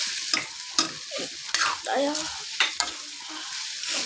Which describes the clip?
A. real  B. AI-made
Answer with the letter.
A